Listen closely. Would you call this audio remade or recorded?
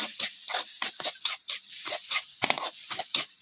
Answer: remade